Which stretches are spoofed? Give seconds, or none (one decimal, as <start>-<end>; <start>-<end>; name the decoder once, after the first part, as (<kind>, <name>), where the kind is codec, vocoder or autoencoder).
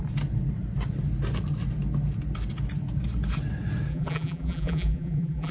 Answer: 3.9-5.5 (vocoder, BigVGAN v2)